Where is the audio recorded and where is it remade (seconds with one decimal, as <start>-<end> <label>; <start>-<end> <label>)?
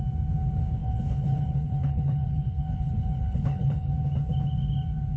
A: 0.0-0.8 recorded; 0.8-3.9 remade; 3.9-5.2 recorded